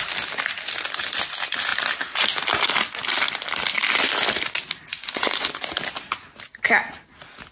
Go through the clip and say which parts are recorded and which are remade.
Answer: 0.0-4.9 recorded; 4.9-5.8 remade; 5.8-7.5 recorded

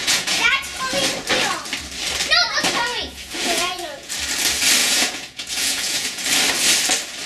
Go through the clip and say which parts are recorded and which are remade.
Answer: 0.0-0.6 remade; 0.6-2.9 recorded; 2.9-4.1 remade; 4.1-4.8 recorded; 4.8-6.2 remade; 6.2-7.3 recorded

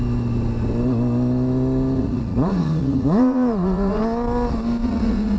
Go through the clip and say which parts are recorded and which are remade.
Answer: 0.0-2.0 recorded; 2.0-4.0 remade; 4.0-4.8 recorded; 4.8-5.4 remade